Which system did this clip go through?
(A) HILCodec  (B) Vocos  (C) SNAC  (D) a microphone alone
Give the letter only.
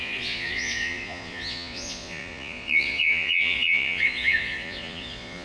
B